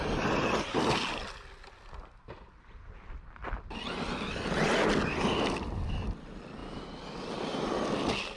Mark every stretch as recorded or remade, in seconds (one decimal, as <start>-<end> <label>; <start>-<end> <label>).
0.0-8.4 recorded